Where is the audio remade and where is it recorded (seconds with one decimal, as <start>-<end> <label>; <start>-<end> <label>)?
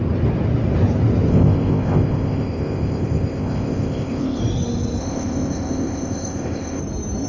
0.0-1.3 recorded; 1.3-4.4 remade; 4.4-5.0 recorded; 5.0-6.8 remade; 6.8-7.3 recorded